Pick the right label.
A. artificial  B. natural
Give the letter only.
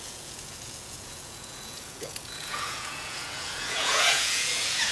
A